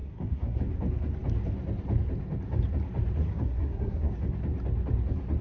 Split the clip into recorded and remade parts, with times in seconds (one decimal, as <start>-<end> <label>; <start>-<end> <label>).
0.0-0.6 remade; 0.6-3.2 recorded; 3.2-4.1 remade; 4.1-5.4 recorded